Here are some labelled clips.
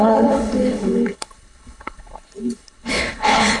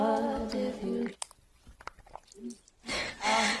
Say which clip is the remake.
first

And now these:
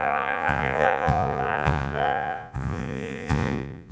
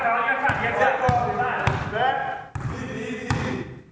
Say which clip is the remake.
first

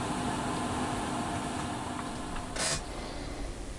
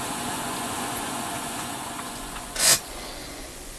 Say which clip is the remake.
second